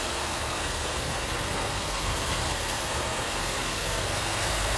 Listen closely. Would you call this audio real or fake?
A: fake